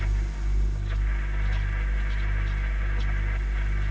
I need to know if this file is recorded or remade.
recorded